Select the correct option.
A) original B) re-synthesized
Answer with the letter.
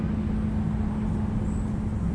A